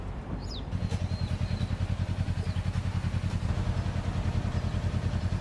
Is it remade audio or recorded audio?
recorded